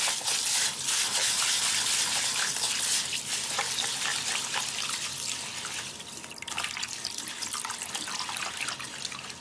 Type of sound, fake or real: real